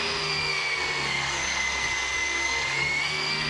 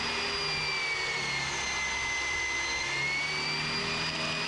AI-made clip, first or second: first